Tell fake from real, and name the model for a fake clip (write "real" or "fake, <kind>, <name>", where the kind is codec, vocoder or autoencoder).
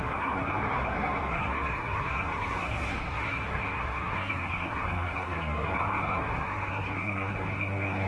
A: fake, codec, SNAC